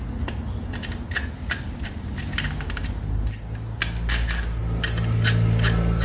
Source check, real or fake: real